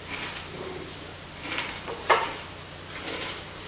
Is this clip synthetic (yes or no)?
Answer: yes